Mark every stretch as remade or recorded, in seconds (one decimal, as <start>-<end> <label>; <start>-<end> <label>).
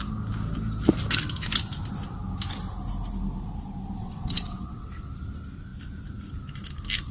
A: 0.0-4.0 recorded; 4.0-4.9 remade; 4.9-7.1 recorded